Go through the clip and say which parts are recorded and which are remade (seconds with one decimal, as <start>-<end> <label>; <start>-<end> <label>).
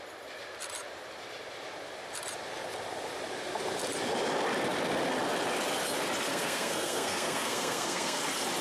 0.0-6.3 recorded; 6.3-8.2 remade; 8.2-8.6 recorded